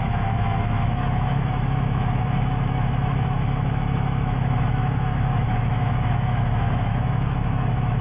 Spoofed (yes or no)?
yes